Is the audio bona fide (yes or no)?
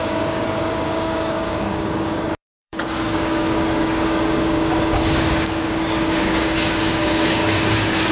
no